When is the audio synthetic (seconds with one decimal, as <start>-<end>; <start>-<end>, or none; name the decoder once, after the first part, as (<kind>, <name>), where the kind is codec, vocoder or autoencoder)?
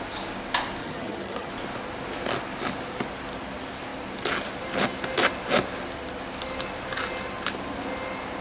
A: 0.8-1.5 (vocoder, HiFi-GAN)